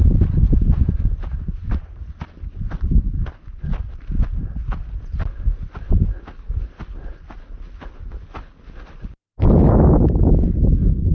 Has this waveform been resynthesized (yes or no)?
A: no